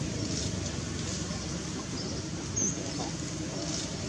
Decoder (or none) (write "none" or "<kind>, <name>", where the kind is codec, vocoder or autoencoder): none